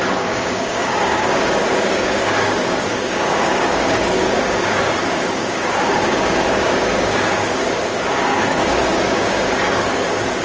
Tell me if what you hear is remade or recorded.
remade